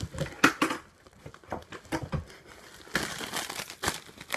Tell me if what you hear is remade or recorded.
recorded